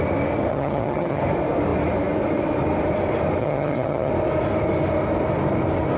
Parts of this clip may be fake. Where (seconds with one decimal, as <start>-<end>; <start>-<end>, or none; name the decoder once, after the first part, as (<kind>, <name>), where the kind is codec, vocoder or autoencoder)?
0.5-1.2 (vocoder, HiFi-GAN); 3.4-4.1